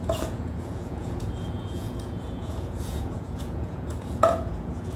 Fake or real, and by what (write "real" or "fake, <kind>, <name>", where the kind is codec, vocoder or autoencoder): fake, vocoder, Vocos